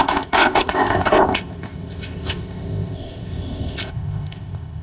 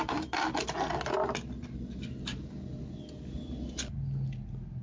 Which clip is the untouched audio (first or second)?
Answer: second